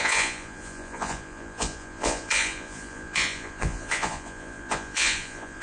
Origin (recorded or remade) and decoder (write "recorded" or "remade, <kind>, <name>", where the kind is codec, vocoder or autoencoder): remade, vocoder, Vocos